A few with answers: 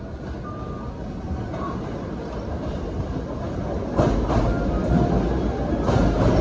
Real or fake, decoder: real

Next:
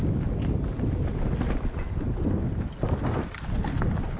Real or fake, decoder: real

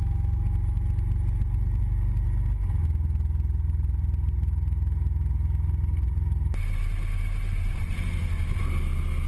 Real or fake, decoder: real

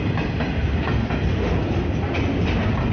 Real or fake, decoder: real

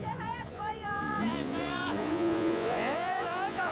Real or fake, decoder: fake, vocoder, Vocos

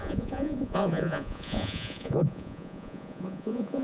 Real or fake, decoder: fake, vocoder, Vocos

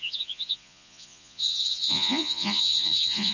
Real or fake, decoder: fake, vocoder, Vocos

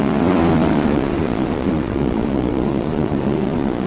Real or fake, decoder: fake, vocoder, Vocos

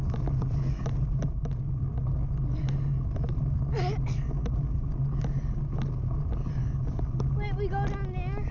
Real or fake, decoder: real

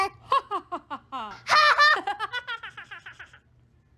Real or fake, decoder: real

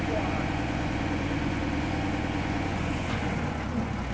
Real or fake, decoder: fake, vocoder, Vocos